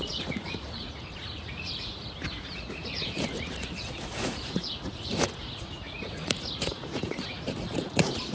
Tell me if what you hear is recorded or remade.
remade